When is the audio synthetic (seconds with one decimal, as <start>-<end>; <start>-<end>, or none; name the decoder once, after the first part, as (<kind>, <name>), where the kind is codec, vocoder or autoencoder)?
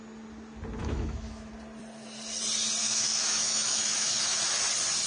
0.8-1.5 (autoencoder, DAC-VAE); 2.8-4.4